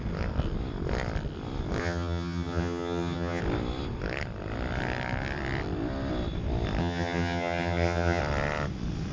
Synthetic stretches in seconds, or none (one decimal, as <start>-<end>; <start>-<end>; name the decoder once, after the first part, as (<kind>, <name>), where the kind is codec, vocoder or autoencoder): 1.8-3.4 (vocoder, HiFi-GAN); 6.8-8.2